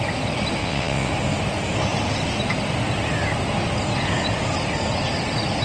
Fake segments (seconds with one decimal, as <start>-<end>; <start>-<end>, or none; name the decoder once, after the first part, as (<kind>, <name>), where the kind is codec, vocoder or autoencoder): 0.6-1.1 (vocoder, WaveNeXt)